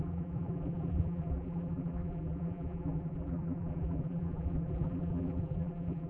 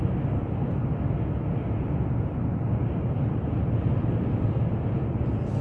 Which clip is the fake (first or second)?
first